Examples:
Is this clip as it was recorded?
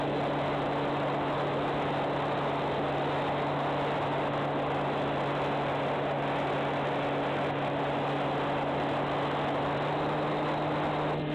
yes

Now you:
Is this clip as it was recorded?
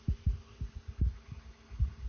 yes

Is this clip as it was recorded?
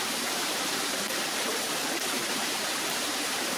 no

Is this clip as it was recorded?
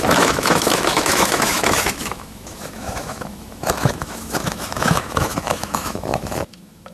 no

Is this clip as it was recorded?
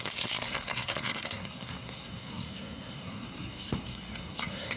no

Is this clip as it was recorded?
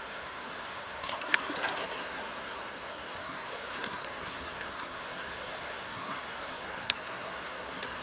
no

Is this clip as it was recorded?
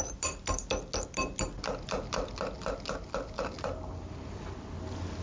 yes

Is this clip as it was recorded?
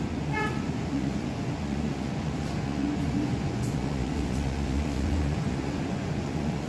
no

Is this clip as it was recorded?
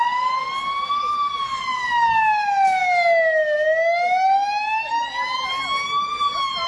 yes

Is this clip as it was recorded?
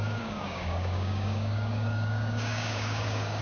no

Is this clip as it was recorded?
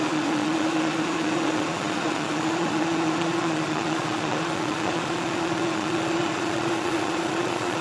no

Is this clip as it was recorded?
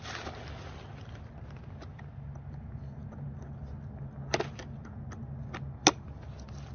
yes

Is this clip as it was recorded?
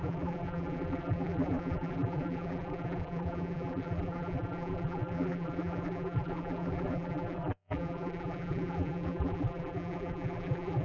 no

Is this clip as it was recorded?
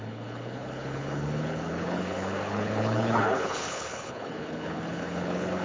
no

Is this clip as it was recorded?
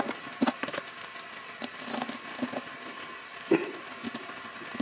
yes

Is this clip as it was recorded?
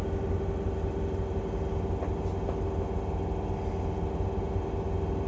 yes